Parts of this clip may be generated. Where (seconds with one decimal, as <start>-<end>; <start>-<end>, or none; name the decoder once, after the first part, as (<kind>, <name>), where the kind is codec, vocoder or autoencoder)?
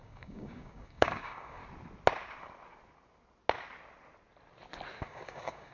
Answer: 0.0-1.6 (codec, DAC); 5.0-5.7